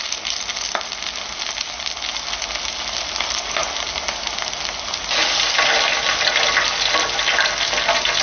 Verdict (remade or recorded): recorded